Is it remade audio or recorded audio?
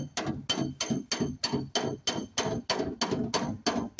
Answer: recorded